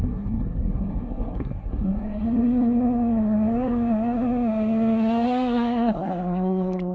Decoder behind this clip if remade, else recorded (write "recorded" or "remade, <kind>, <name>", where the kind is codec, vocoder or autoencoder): remade, codec, SNAC